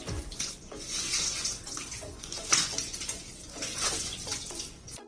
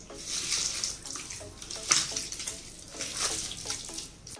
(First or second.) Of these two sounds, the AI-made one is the first